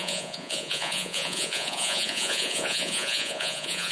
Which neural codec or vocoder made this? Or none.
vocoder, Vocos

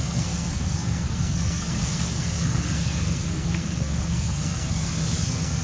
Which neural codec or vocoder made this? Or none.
codec, SNAC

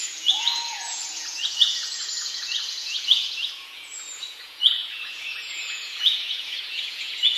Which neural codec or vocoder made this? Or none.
vocoder, Vocos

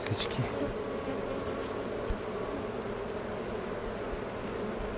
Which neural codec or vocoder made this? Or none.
none